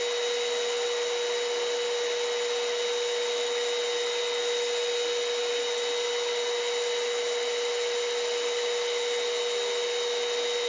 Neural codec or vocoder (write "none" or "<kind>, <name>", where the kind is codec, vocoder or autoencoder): none